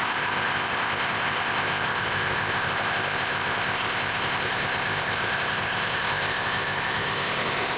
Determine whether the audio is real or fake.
fake